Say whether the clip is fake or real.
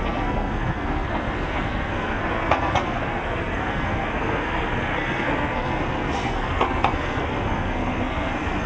fake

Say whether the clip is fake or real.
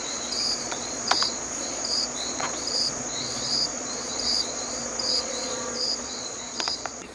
fake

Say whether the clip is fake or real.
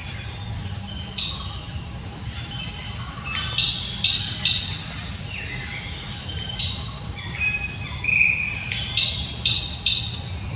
real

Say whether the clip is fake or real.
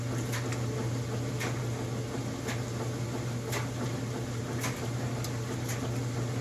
real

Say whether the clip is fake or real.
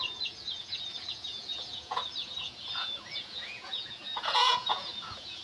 fake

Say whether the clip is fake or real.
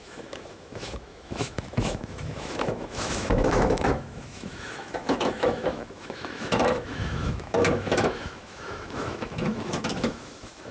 fake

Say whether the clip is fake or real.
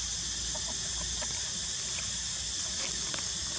real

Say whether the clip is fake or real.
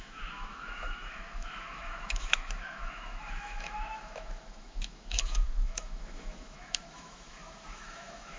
fake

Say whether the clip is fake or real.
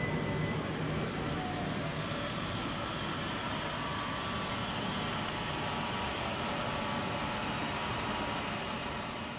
real